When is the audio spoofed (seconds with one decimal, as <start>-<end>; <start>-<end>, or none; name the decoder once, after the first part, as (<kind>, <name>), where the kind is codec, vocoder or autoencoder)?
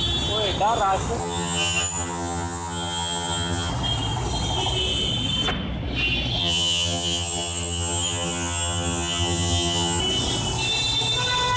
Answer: 1.2-3.7 (vocoder, HiFi-GAN); 6.4-10.0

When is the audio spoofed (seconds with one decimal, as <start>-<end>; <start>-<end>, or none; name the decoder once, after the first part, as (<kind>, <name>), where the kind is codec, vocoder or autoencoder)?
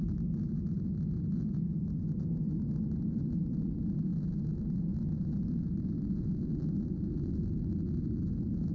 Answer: none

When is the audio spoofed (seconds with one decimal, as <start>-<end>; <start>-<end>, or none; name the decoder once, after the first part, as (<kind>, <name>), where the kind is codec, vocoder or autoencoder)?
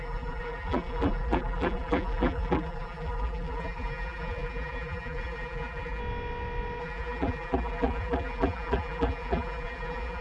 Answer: 0.0-6.0 (vocoder, BigVGAN v2); 6.8-10.2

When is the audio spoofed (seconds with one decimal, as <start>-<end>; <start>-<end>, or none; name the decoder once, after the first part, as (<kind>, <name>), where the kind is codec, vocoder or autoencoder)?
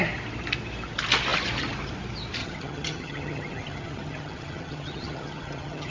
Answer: 2.4-5.9 (vocoder, HiFi-GAN)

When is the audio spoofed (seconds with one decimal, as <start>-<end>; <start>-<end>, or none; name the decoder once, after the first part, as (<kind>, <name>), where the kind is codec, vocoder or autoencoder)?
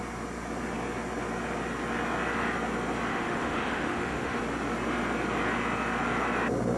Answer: 3.1-4.4 (autoencoder, DAC-VAE)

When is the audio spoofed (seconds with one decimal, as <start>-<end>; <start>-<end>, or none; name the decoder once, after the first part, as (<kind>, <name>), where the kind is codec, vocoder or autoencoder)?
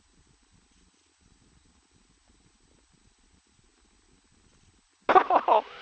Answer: none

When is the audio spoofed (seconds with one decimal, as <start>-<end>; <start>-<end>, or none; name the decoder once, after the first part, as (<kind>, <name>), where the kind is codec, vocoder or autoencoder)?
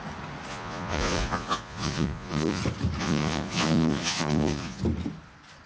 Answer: 0.5-2.6 (vocoder, Vocos); 3.0-4.8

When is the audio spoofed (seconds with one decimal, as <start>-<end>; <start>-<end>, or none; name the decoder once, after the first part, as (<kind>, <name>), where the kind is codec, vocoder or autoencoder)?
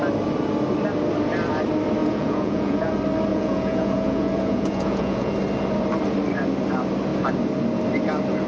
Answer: 2.0-2.9 (vocoder, Vocos); 3.3-5.3